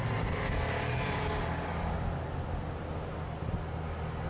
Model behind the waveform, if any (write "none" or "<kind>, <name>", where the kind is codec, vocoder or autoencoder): none